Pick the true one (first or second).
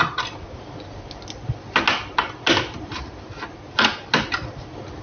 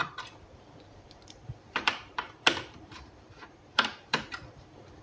first